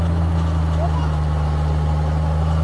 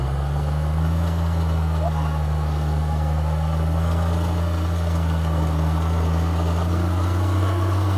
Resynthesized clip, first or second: second